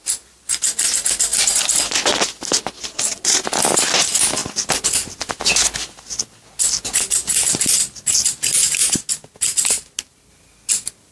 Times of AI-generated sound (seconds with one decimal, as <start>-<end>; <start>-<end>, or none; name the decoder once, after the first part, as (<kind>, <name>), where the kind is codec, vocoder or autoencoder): none